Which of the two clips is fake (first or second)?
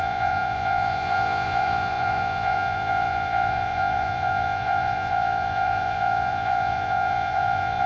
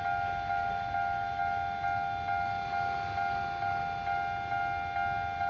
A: first